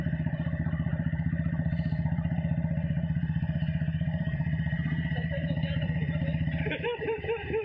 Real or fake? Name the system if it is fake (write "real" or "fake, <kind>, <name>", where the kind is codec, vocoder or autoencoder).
fake, vocoder, BigVGAN v2